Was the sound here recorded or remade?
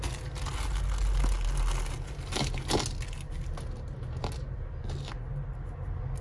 recorded